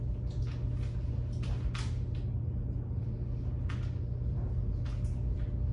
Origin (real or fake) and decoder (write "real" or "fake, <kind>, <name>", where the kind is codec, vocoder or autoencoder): real